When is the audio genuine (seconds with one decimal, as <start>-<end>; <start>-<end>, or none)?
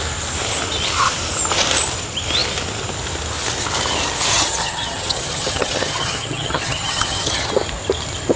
0.0-4.3; 7.5-8.4